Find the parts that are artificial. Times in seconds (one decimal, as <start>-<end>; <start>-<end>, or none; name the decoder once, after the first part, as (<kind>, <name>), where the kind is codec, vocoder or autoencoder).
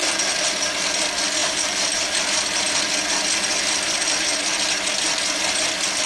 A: 1.4-2.0 (vocoder, BigVGAN v2)